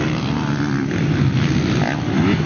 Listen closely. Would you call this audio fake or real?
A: real